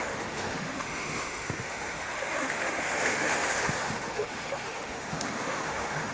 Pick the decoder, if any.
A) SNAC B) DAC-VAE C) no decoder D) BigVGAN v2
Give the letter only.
B